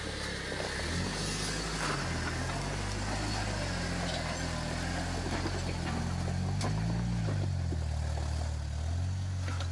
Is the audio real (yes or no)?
yes